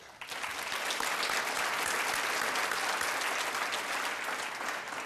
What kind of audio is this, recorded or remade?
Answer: recorded